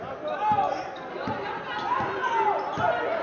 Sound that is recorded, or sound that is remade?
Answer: recorded